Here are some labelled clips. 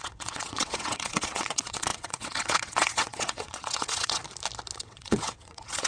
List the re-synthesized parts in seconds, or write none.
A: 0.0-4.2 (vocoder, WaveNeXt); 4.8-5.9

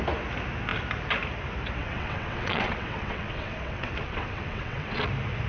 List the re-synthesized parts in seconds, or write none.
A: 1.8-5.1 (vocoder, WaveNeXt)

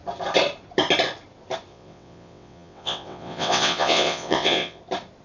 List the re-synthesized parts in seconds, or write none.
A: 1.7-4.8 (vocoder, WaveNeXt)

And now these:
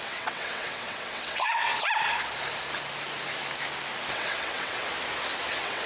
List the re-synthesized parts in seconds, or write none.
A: 0.0-1.7 (vocoder, WaveNeXt); 4.1-4.8; 5.5-5.9